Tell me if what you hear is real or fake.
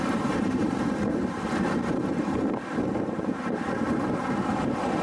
fake